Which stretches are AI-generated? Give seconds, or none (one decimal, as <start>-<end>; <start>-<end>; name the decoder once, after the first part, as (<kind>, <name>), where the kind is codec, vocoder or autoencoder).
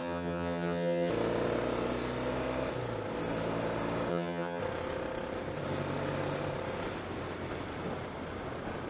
0.0-1.1 (vocoder, HiFi-GAN); 4.1-4.6